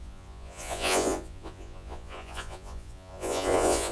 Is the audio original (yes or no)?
no